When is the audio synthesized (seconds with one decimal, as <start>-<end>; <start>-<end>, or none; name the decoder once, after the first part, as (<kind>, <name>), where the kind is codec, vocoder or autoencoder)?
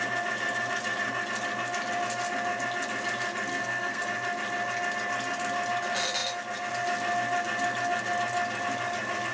3.5-4.0 (codec, SNAC)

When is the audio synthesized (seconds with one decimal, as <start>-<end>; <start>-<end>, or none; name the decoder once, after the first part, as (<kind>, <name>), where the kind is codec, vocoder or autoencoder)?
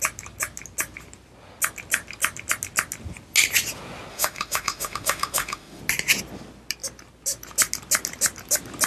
4.1-5.8 (autoencoder, DAC-VAE)